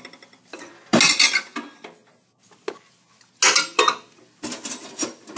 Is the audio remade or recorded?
recorded